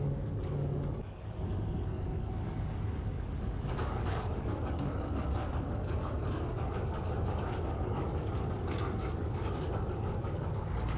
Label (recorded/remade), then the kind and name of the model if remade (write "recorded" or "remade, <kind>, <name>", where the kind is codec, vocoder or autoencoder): remade, codec, DAC